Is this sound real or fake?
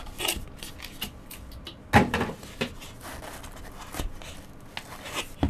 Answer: real